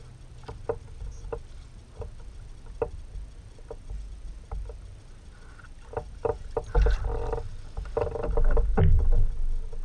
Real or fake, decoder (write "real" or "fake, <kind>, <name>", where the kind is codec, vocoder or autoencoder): real